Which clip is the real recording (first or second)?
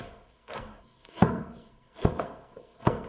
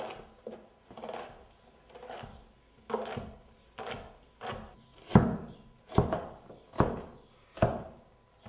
second